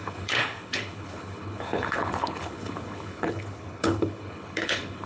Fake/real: fake